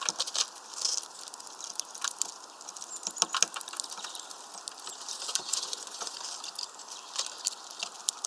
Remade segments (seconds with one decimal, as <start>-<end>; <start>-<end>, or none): 5.5-6.2